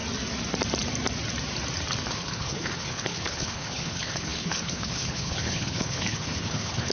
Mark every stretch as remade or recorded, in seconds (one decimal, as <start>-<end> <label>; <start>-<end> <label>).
0.0-2.1 recorded; 2.1-6.9 remade